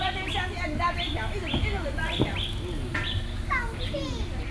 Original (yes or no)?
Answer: yes